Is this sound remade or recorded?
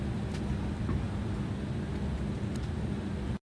recorded